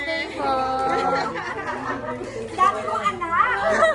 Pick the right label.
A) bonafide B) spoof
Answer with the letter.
A